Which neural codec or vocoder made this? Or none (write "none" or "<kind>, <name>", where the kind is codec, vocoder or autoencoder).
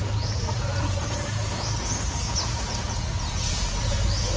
vocoder, Vocos